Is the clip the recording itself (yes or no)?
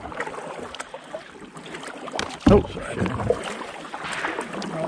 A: yes